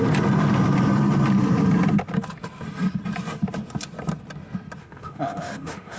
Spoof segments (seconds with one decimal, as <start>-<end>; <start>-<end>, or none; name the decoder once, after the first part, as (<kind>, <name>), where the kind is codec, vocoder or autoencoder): 4.8-6.0 (autoencoder, DAC-VAE)